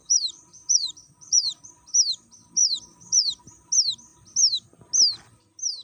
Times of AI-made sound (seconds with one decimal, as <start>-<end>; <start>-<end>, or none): 0.0-1.7; 2.6-3.4